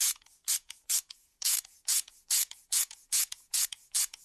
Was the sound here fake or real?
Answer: fake